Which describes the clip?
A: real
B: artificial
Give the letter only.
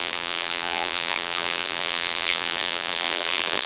B